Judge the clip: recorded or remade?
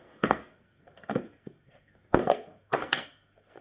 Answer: remade